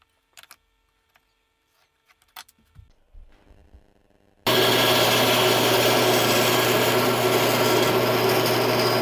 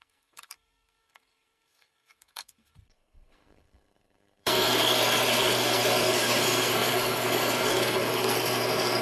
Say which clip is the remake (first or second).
second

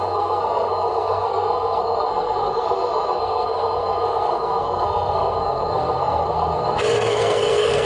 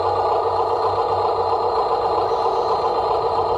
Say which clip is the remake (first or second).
first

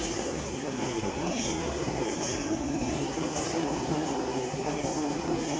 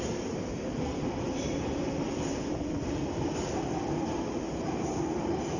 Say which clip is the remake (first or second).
first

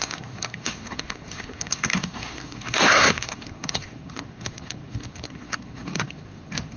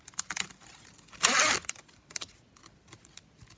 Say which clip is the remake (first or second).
first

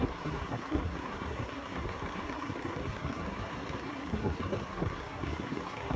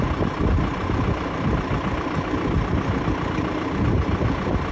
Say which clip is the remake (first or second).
first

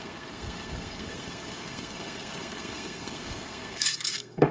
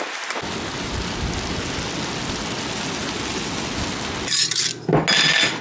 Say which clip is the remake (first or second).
first